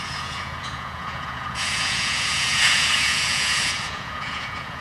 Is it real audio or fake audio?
fake